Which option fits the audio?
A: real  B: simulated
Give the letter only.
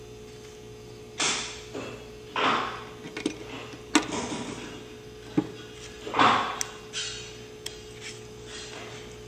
A